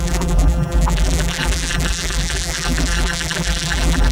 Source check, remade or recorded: remade